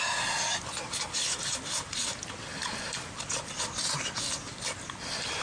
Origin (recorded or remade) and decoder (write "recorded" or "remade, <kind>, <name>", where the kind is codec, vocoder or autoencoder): recorded